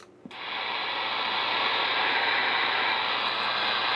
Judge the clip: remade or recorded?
recorded